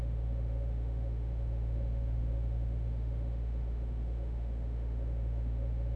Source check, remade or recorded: remade